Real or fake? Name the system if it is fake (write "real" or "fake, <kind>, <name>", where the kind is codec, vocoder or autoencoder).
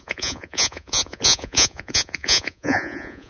fake, vocoder, Vocos